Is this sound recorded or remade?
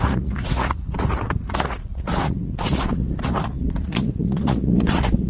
remade